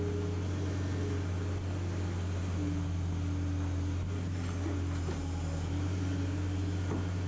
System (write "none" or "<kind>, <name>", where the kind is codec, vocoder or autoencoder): none